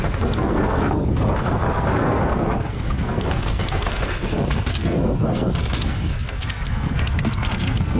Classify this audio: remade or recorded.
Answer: remade